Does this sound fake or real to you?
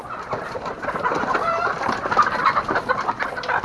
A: real